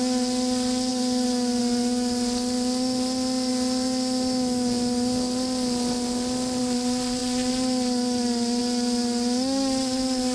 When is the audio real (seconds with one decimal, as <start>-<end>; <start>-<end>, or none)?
0.0-0.9; 1.6-7.2; 8.6-10.3